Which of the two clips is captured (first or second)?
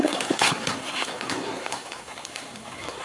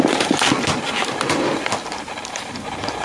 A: second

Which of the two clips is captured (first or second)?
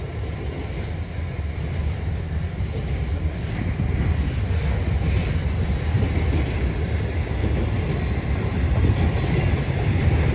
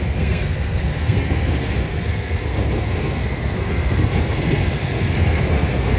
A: first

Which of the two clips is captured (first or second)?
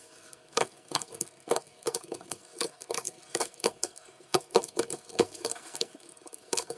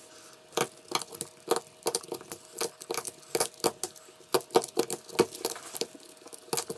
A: second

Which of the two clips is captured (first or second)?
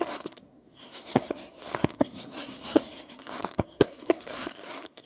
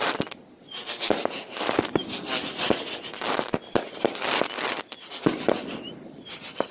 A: second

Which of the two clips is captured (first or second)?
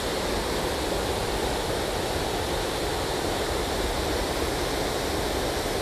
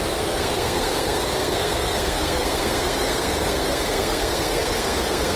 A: first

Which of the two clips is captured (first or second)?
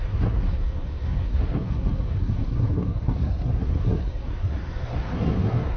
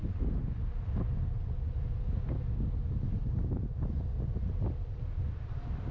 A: second